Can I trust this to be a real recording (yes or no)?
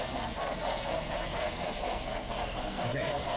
no